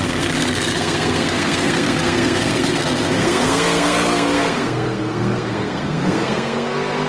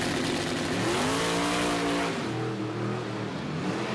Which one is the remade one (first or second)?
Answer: first